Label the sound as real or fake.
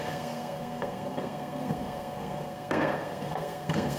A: fake